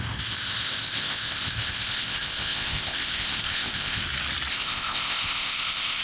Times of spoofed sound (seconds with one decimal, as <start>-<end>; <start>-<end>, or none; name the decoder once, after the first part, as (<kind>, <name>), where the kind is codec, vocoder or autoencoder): 0.0-4.0 (codec, ZipCodec); 4.5-6.0